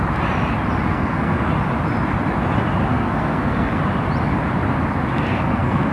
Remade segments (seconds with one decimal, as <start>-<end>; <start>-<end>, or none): 0.9-1.5; 2.9-3.8; 5.3-5.9